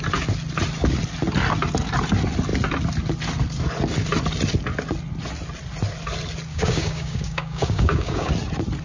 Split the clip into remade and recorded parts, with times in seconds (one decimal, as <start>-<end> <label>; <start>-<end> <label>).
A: 0.0-6.5 recorded; 6.5-8.3 remade; 8.3-8.8 recorded